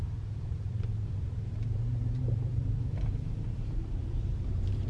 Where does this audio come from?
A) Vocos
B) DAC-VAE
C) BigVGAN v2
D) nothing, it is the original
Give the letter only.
C